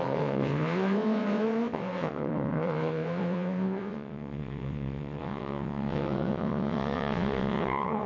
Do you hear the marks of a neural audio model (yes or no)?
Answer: yes